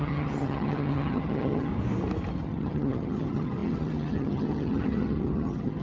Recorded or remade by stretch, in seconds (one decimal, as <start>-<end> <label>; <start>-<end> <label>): 0.0-1.7 remade; 1.7-2.4 recorded; 2.4-5.8 remade